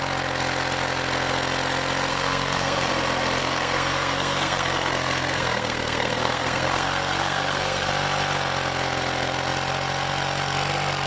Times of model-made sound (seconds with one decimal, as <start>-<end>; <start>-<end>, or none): 2.1-2.9; 3.4-7.9